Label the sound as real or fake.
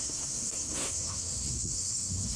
fake